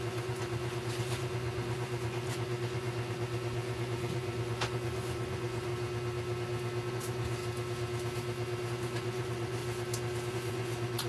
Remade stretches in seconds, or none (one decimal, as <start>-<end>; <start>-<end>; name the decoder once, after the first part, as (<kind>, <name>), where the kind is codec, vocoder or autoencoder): 0.0-5.7 (vocoder, Vocos); 6.9-7.4; 8.7-9.6; 10.3-11.1